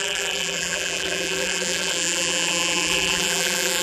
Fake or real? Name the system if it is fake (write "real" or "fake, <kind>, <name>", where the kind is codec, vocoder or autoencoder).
fake, vocoder, BigVGAN v2